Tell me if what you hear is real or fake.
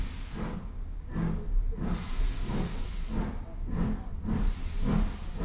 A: real